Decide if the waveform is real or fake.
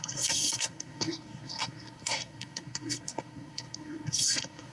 fake